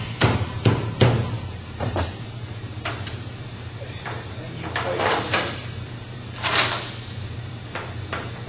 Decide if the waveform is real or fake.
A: fake